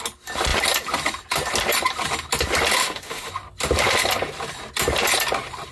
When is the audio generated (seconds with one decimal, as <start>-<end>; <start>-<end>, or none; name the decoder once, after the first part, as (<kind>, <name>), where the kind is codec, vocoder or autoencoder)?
2.8-3.3 (autoencoder, DAC-VAE)